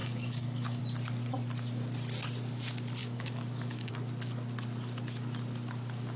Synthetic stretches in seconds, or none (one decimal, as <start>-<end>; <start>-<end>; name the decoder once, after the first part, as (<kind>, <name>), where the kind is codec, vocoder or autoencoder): 0.0-0.8 (codec, DAC); 3.0-3.9